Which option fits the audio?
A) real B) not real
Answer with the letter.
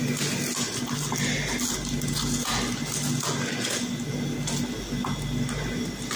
A